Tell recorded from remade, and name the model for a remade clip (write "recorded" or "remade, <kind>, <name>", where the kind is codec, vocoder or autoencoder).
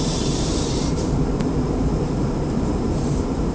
remade, vocoder, BigVGAN v2